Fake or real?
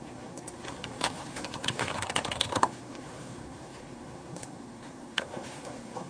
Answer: fake